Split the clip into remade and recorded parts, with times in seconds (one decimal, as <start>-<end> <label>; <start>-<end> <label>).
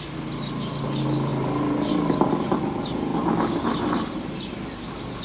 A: 0.0-5.2 recorded